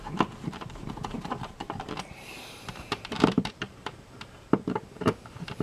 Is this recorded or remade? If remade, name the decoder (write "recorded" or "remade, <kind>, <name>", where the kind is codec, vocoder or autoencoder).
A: remade, vocoder, BigVGAN v2